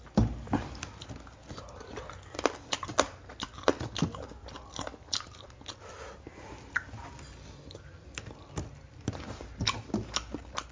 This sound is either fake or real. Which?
real